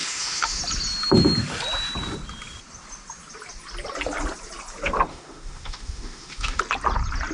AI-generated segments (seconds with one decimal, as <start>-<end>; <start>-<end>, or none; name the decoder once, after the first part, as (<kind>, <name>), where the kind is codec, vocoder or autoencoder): 0.0-0.6 (autoencoder, DAC-VAE); 5.1-6.6